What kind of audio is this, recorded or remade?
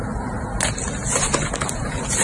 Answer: recorded